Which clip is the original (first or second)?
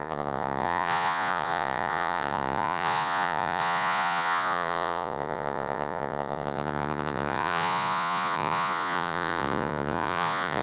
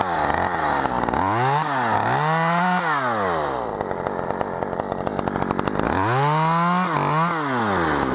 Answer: second